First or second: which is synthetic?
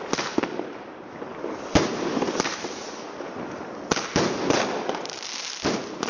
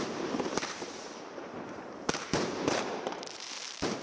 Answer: second